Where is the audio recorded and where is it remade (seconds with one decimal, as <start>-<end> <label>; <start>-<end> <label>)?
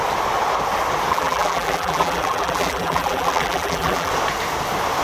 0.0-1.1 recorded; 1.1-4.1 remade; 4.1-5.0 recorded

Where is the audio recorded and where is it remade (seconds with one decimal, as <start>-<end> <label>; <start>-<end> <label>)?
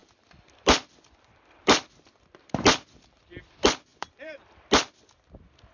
0.0-3.4 remade; 3.4-3.9 recorded; 3.9-4.4 remade; 4.4-5.7 recorded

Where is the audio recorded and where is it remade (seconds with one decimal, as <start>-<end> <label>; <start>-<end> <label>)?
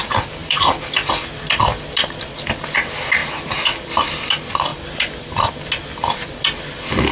0.0-0.4 recorded; 0.4-1.1 remade; 1.1-3.2 recorded; 3.2-3.9 remade; 3.9-4.7 recorded; 4.7-5.5 remade; 5.5-7.1 recorded